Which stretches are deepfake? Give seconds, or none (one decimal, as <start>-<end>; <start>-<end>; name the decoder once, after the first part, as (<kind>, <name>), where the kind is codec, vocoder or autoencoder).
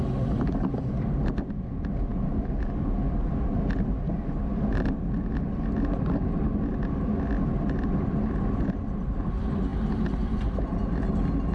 none